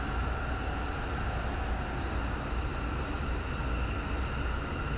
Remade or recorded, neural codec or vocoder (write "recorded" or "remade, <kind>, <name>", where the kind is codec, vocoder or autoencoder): recorded